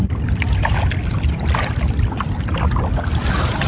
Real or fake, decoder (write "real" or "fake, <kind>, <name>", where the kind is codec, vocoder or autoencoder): real